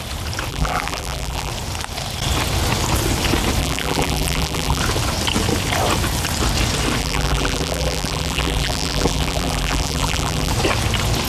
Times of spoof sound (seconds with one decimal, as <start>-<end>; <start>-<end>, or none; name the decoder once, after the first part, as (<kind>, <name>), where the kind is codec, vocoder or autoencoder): 0.5-1.5 (vocoder, BigVGAN v2); 3.6-4.8; 7.0-10.5